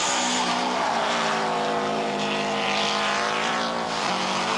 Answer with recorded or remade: remade